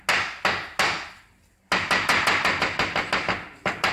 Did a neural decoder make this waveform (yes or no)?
no